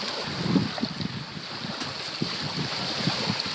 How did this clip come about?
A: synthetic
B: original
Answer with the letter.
B